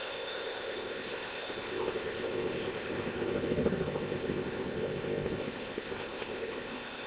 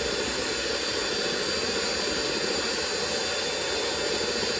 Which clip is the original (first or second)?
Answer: second